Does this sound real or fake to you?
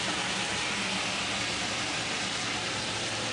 real